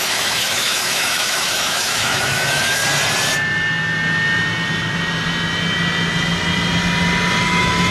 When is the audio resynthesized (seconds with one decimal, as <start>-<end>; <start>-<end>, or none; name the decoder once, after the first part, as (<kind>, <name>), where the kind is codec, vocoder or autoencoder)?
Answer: 0.0-2.8 (autoencoder, DAC-VAE); 7.4-7.9